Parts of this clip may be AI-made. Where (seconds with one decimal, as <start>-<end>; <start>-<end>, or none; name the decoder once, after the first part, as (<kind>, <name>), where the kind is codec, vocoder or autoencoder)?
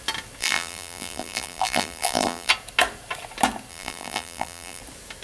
0.4-2.5 (vocoder, BigVGAN v2); 3.7-4.8